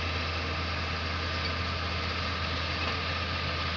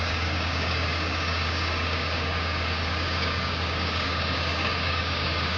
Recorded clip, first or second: first